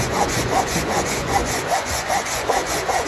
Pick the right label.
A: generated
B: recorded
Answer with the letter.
A